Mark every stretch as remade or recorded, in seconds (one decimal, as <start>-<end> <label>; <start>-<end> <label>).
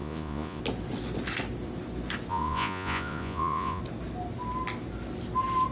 0.0-0.6 remade; 0.6-2.3 recorded; 2.3-3.8 remade; 3.8-5.7 recorded